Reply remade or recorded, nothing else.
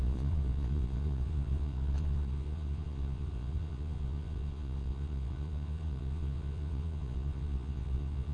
remade